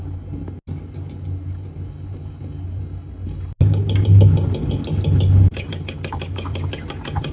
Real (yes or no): yes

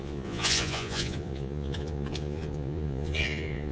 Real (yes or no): no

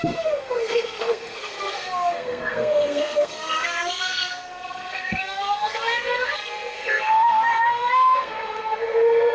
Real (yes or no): no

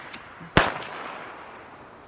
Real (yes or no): yes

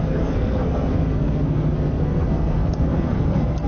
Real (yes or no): no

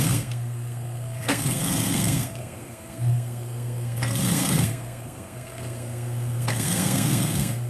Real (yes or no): no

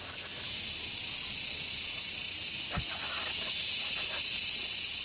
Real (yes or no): yes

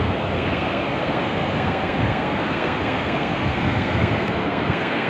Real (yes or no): no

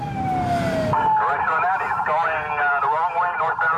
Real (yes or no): yes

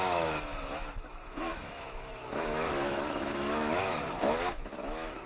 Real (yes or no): no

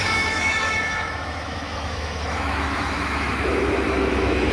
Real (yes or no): no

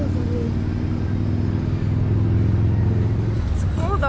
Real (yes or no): yes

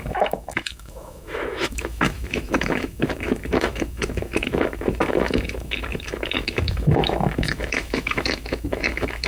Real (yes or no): no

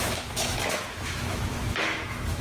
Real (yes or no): no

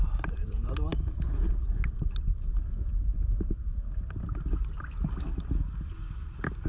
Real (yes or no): yes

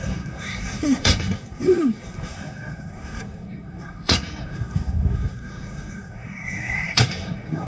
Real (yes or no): no